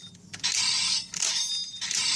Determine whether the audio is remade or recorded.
recorded